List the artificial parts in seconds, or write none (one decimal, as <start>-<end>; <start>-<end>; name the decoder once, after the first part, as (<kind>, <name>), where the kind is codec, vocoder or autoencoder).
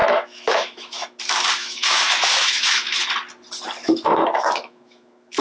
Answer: 0.0-1.2 (autoencoder, DAC-VAE); 1.6-3.0; 3.8-5.4